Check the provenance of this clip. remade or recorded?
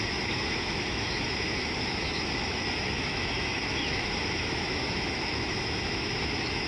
remade